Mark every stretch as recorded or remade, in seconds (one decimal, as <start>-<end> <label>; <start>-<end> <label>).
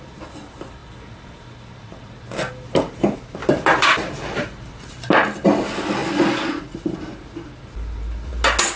0.0-3.4 recorded; 3.4-5.1 remade; 5.1-8.8 recorded